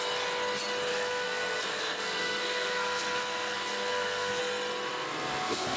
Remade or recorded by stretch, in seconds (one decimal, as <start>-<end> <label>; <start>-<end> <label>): 0.0-0.9 recorded; 0.9-4.4 remade; 4.4-4.9 recorded; 4.9-5.8 remade